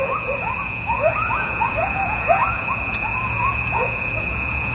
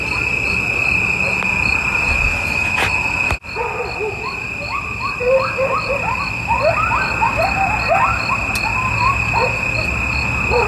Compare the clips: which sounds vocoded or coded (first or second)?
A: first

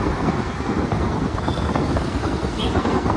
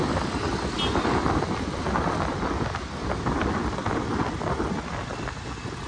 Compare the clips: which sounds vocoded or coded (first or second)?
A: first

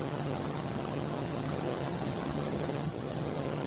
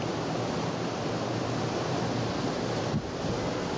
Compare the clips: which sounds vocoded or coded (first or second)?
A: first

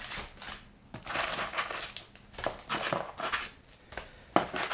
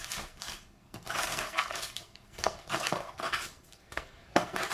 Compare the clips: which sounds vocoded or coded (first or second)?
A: second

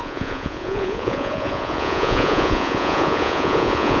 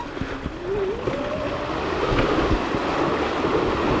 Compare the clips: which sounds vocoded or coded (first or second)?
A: first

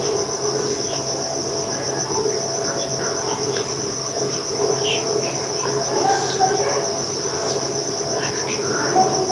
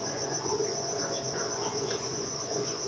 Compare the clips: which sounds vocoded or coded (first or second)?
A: second